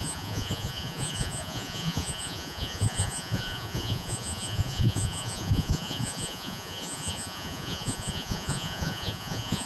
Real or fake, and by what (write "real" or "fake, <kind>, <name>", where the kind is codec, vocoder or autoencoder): fake, vocoder, Vocos